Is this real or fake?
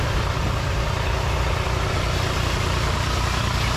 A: real